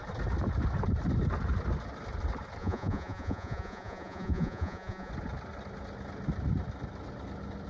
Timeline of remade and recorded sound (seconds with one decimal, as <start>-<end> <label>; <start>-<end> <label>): 0.0-2.6 recorded; 2.6-5.1 remade; 5.1-7.7 recorded